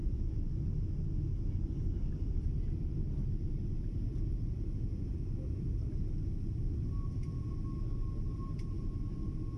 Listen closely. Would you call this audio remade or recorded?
recorded